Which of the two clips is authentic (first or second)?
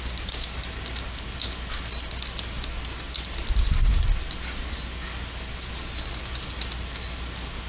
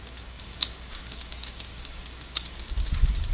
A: first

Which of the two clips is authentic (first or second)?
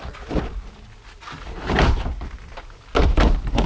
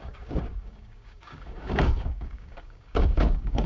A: first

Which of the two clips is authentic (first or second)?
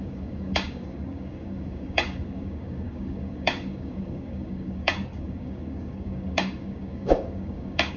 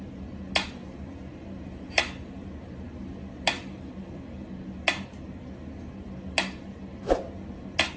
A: second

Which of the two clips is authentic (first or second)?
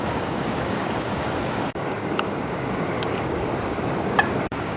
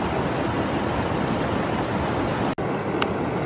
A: second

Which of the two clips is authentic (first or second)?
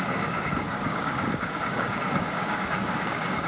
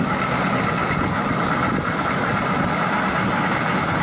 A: second